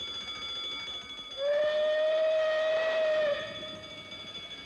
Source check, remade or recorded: recorded